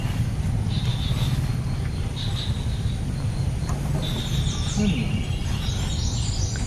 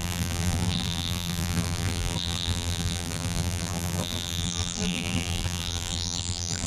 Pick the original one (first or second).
first